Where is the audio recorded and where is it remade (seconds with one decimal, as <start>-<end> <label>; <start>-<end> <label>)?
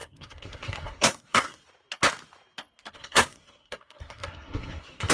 0.0-1.6 remade; 1.6-2.9 recorded; 2.9-5.1 remade